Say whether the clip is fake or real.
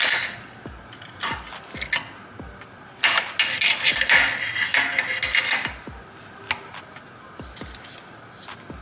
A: real